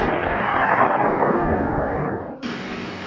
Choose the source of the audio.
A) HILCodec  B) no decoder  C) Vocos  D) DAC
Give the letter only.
D